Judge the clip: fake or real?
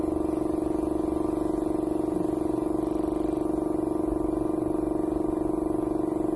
real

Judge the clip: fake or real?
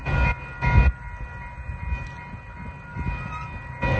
real